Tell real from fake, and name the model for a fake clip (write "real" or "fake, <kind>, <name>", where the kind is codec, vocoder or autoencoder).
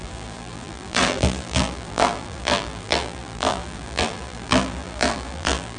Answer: fake, vocoder, BigVGAN v2